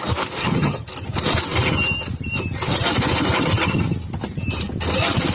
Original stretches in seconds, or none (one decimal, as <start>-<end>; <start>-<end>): 0.0-0.4; 0.9-5.3